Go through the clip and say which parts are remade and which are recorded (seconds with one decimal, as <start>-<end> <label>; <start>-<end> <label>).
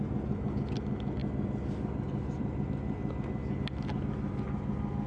0.0-5.1 recorded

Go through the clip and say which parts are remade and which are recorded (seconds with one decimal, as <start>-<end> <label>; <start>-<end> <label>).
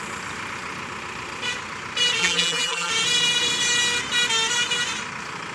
0.0-2.2 recorded; 2.2-2.9 remade; 2.9-5.5 recorded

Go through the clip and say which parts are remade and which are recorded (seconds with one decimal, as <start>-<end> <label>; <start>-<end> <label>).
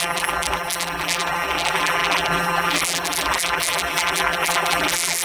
0.0-5.2 remade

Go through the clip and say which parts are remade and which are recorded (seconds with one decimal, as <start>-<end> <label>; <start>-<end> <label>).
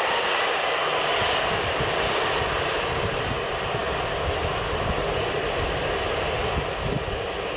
0.0-7.6 recorded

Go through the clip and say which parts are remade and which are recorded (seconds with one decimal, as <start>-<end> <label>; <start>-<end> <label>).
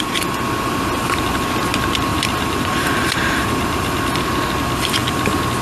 0.0-2.1 recorded; 2.1-4.0 remade; 4.0-5.6 recorded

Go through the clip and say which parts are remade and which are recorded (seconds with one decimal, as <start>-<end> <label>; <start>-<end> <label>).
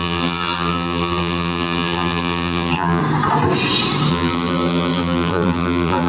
0.0-3.0 remade; 3.0-4.1 recorded; 4.1-6.1 remade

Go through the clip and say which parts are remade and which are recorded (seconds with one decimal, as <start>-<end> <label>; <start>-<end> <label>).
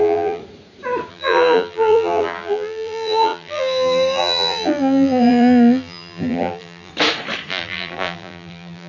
0.0-0.4 remade; 0.4-1.1 recorded; 1.1-6.9 remade; 6.9-7.5 recorded; 7.5-8.9 remade